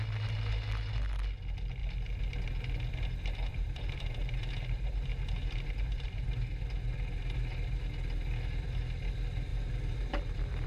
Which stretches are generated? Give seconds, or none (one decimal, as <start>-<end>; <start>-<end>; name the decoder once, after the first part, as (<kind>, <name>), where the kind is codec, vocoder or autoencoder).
3.5-6.3 (vocoder, BigVGAN v2); 9.5-10.7